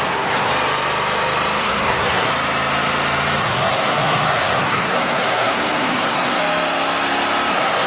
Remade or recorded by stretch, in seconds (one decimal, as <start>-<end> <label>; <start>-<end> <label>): 0.0-0.5 remade; 0.5-1.6 recorded; 1.6-2.3 remade; 2.3-3.4 recorded; 3.4-6.4 remade; 6.4-7.5 recorded; 7.5-7.9 remade